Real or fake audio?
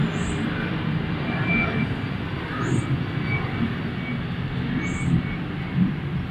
real